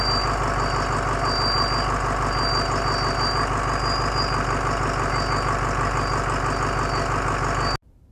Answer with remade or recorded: recorded